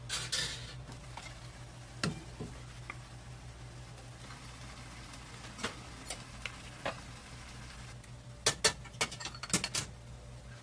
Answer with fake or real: real